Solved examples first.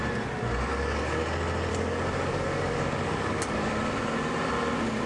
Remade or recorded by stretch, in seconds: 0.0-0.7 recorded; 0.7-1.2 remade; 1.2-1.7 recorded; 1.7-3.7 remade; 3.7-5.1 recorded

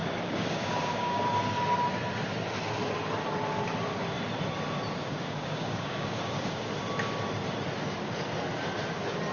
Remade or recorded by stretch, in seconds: 0.0-1.3 remade; 1.3-4.9 recorded; 4.9-6.7 remade; 6.7-9.3 recorded

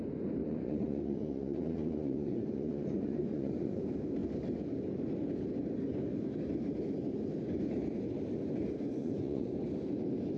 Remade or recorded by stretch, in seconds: 0.0-0.4 recorded; 0.4-3.8 remade; 3.8-9.0 recorded; 9.0-9.5 remade; 9.5-10.4 recorded

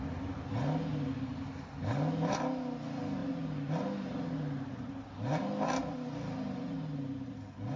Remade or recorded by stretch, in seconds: 0.0-7.8 recorded

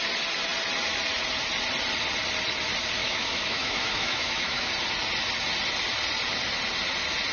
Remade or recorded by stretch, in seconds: 0.0-3.0 recorded; 3.0-4.7 remade; 4.7-7.3 recorded